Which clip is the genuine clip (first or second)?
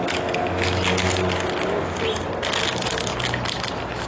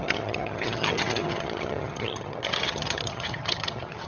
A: first